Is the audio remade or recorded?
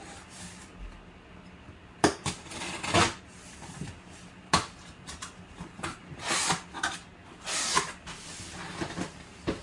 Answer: recorded